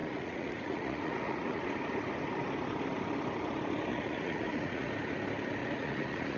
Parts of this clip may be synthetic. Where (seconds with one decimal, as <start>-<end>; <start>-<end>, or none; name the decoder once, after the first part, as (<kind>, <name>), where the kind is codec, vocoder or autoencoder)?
0.0-1.6 (vocoder, Vocos); 3.9-4.9; 5.6-6.4

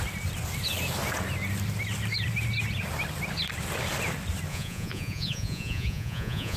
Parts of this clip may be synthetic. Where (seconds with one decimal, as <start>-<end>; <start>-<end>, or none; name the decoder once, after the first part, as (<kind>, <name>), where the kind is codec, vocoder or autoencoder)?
4.5-6.6 (vocoder, Vocos)